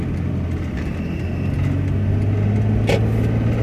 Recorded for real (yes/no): yes